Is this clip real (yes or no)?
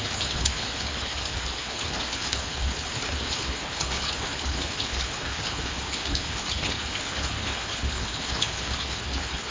no